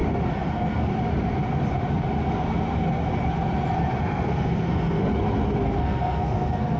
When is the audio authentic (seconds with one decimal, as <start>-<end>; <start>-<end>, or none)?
0.0-0.5; 0.9-4.0; 5.0-5.6